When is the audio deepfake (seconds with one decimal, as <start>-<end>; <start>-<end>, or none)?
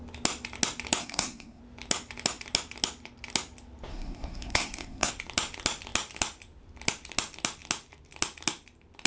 1.0-1.6; 3.9-5.1